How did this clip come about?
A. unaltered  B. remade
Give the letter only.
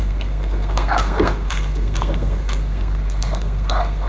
B